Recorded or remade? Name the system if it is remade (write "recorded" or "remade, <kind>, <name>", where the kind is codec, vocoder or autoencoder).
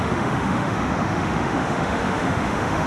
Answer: remade, autoencoder, DAC-VAE